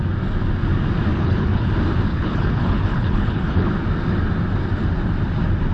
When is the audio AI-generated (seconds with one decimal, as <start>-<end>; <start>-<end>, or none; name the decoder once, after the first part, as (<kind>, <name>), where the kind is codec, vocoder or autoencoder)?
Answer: 1.1-1.7 (codec, HILCodec); 2.1-3.7